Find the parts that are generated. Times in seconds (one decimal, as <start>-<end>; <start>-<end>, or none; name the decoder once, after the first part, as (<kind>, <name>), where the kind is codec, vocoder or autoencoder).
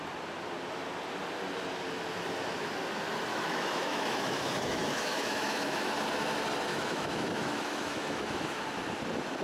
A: 3.3-5.9 (autoencoder, DAC-VAE); 6.7-8.6